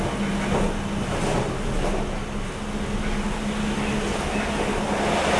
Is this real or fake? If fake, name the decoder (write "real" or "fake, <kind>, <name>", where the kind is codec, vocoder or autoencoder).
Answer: real